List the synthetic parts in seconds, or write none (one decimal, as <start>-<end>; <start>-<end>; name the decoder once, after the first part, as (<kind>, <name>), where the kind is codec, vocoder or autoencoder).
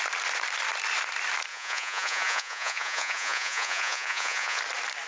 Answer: 1.5-4.6 (vocoder, Vocos)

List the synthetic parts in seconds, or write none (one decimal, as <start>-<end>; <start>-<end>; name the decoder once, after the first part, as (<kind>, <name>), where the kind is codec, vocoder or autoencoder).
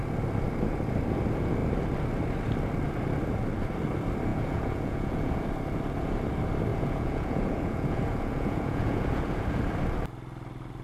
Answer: 4.3-5.5 (vocoder, Vocos); 6.7-9.4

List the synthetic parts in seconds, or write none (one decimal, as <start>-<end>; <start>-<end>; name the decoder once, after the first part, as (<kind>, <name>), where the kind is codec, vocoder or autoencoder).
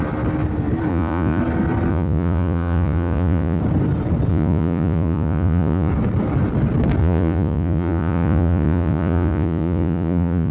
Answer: 0.9-1.4 (vocoder, Vocos); 1.9-3.6; 4.3-5.9; 7.0-10.5